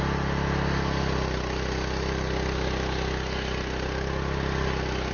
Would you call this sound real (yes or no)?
yes